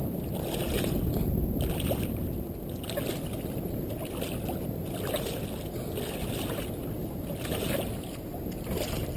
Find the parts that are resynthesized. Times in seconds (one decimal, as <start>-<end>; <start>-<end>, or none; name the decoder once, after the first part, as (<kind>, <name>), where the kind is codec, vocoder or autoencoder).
none